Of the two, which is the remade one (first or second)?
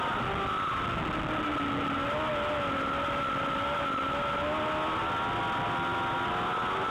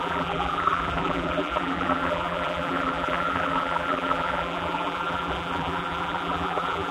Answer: second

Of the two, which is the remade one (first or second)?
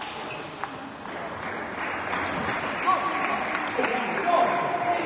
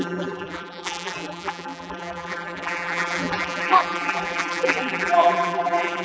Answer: second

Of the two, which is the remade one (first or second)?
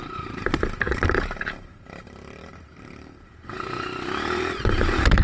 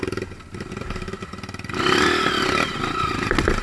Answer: first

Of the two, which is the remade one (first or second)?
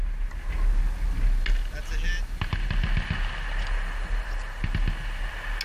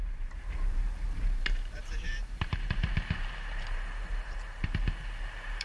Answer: second